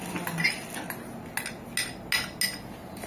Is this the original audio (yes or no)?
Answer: yes